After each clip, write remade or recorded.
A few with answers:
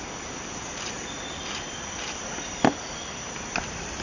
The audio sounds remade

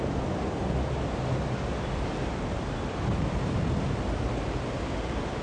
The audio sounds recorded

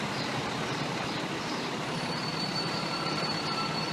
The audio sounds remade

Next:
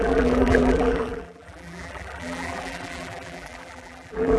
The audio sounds remade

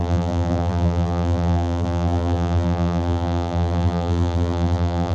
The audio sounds remade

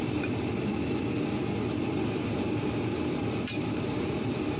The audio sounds remade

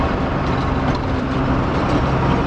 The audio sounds remade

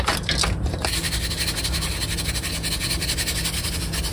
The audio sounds recorded